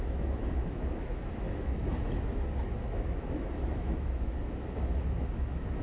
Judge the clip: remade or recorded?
remade